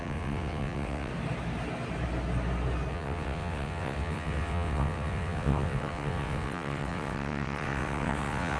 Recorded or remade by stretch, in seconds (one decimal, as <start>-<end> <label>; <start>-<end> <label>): 0.0-1.1 remade; 1.1-2.9 recorded; 2.9-8.6 remade